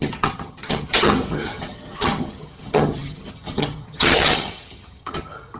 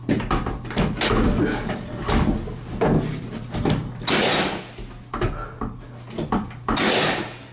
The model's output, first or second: first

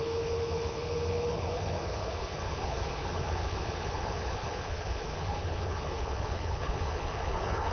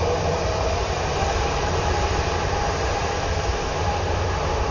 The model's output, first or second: first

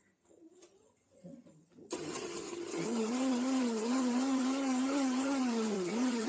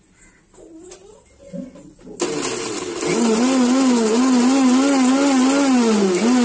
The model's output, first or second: first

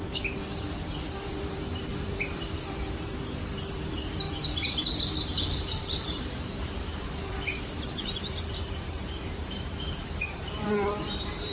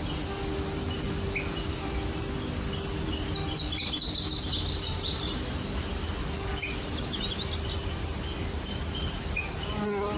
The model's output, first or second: first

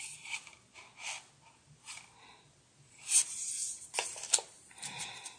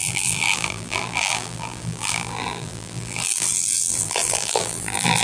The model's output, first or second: second